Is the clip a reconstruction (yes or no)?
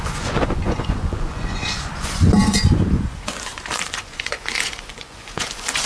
yes